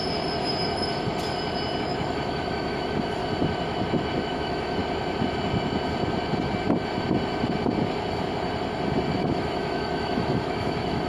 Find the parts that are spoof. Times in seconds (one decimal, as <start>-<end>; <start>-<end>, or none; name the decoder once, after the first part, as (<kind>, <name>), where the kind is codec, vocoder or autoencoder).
1.8-3.2 (autoencoder, DAC-VAE); 4.3-4.8; 9.2-11.1